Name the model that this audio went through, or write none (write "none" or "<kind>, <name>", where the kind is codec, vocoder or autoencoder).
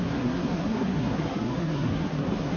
codec, SNAC